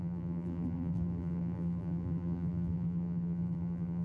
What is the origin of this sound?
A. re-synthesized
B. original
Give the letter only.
A